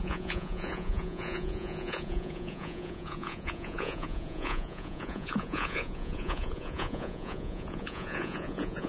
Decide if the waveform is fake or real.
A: fake